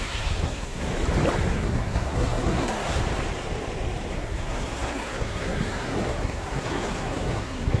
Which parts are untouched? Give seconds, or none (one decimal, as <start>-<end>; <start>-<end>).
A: 0.9-1.5; 3.0-4.1